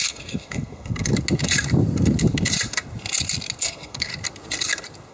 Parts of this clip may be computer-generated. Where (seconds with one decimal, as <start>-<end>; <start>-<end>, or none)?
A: 0.0-1.1; 3.6-4.1

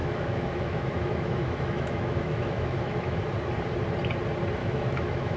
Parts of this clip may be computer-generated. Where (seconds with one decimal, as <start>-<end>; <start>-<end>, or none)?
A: 0.0-3.2; 4.6-5.4

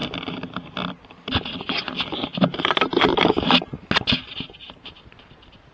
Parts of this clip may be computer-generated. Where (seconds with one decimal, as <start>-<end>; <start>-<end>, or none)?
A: none

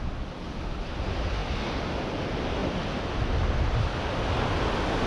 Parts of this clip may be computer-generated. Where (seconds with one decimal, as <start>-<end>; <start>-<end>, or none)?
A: none

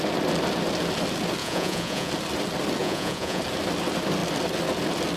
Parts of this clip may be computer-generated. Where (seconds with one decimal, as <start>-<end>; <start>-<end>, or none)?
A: 1.4-2.1; 2.8-3.4